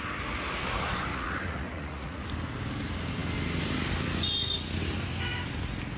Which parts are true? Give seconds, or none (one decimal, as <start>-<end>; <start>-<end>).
0.0-1.1; 2.2-6.0